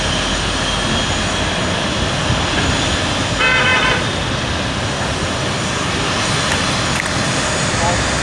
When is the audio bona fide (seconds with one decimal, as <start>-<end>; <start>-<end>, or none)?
0.0-8.2